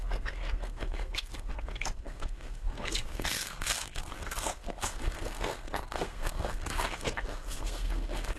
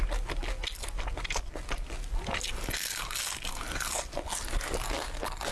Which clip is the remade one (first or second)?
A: first